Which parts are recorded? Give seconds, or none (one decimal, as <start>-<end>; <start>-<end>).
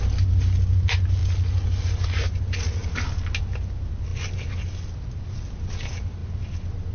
0.0-6.9